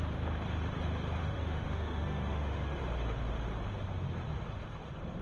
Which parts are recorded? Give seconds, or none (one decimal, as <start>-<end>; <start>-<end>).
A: 0.0-1.2; 2.8-5.2